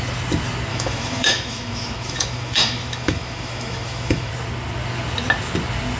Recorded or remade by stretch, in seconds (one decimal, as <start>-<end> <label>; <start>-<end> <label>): 0.0-0.7 recorded; 0.7-4.3 remade; 4.3-6.0 recorded